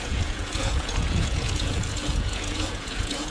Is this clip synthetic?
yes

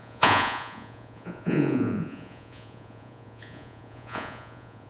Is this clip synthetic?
yes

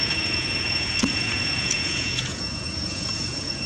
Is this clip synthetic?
yes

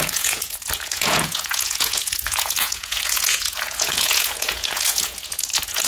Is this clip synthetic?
yes